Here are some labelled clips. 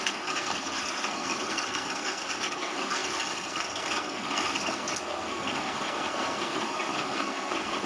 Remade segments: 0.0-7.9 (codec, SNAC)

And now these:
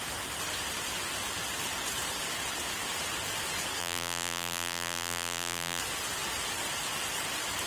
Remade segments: 3.8-5.8 (vocoder, BigVGAN v2)

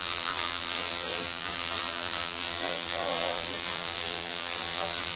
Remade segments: 0.0-5.2 (vocoder, BigVGAN v2)

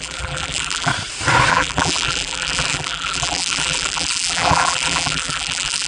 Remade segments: 0.0-0.9 (vocoder, BigVGAN v2); 1.5-5.9